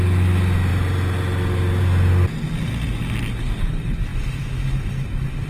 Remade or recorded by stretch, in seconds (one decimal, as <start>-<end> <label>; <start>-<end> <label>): 0.0-5.5 recorded